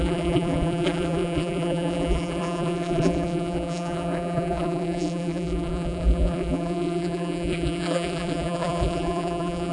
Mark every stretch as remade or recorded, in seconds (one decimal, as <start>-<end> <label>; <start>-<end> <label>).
0.0-9.7 remade